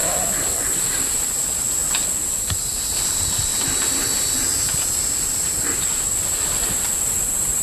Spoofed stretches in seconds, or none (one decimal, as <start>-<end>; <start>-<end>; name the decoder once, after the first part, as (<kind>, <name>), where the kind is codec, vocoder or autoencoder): 1.3-7.6 (vocoder, BigVGAN v2)